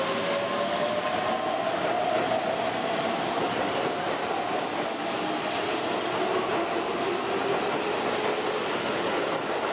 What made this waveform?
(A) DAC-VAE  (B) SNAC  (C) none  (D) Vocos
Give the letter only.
C